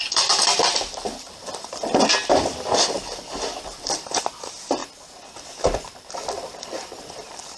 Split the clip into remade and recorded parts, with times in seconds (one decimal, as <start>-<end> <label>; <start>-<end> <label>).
0.0-4.8 remade; 4.8-6.1 recorded; 6.1-7.6 remade